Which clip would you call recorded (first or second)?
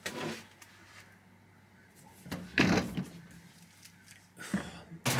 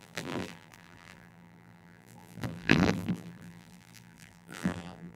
first